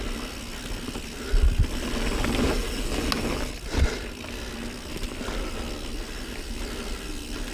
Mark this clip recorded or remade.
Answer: recorded